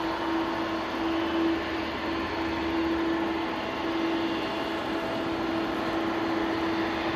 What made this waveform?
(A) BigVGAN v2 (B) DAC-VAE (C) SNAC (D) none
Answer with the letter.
D